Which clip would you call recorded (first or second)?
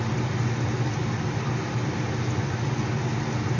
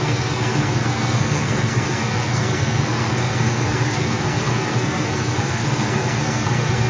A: first